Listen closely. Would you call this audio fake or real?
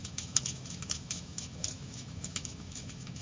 fake